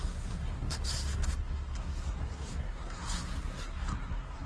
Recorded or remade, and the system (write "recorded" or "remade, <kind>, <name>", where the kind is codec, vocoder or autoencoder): remade, codec, SNAC